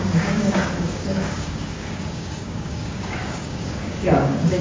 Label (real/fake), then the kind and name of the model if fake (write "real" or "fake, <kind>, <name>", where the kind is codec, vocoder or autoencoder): fake, codec, DAC